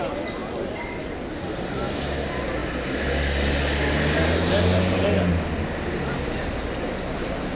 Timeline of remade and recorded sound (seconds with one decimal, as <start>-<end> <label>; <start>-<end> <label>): 0.0-7.5 recorded